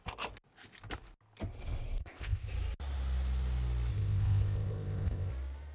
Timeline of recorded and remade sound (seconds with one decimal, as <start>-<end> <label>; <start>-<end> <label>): 0.0-2.0 recorded; 2.0-2.5 remade; 2.5-3.9 recorded; 3.9-5.3 remade; 5.3-5.7 recorded